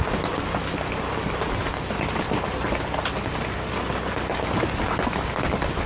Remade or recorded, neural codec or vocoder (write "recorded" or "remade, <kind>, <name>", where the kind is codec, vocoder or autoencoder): recorded